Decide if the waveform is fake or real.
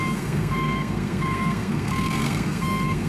fake